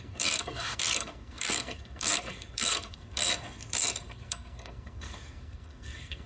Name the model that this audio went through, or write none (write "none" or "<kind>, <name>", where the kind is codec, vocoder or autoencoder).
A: codec, SNAC